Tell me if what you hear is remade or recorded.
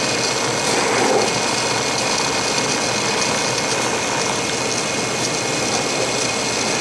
recorded